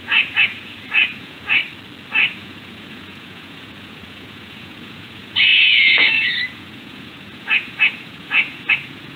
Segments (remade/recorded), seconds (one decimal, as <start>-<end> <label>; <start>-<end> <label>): 0.0-1.6 remade; 1.6-2.3 recorded; 2.3-9.2 remade